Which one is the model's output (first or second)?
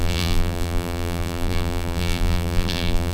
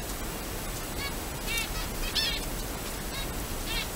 first